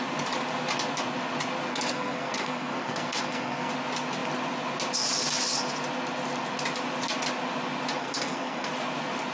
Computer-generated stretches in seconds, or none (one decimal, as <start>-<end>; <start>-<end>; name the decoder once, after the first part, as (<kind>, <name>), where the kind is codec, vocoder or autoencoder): 1.7-3.7 (codec, SNAC); 8.0-8.7